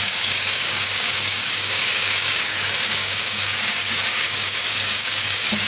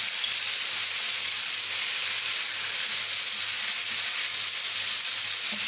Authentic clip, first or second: second